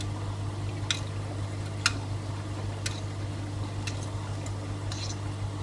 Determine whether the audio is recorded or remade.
recorded